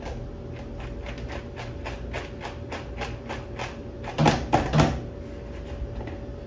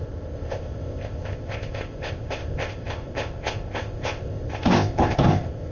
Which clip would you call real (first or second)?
first